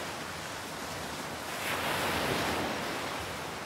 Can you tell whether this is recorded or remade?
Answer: recorded